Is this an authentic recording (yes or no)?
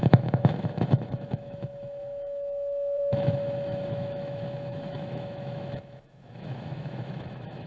no